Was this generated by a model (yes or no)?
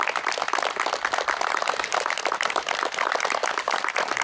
no